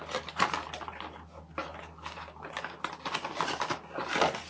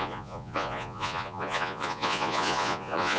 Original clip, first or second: first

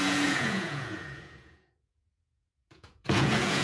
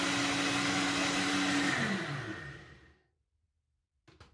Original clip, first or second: second